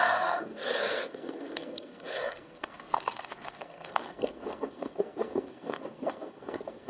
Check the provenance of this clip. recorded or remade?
remade